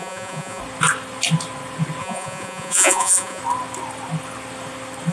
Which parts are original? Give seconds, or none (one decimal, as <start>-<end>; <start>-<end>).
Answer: 0.6-2.0; 3.4-5.1